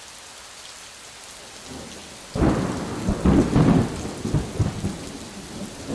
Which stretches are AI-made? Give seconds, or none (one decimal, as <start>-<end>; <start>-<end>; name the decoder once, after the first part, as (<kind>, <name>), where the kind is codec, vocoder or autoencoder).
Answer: none